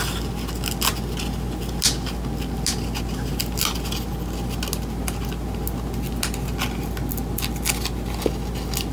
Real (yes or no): yes